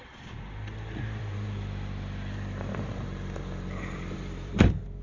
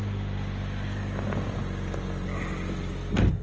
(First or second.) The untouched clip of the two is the second